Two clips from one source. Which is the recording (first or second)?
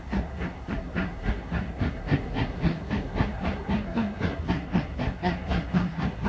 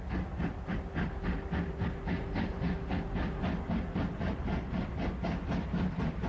second